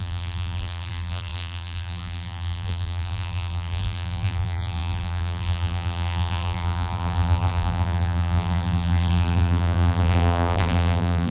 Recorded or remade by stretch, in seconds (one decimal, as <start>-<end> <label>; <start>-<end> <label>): 0.0-11.3 remade